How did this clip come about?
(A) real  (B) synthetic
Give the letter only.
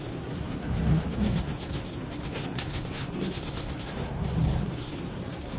B